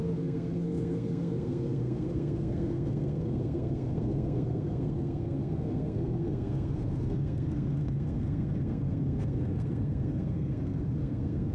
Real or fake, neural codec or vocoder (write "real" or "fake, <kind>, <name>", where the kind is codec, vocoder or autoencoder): fake, codec, SNAC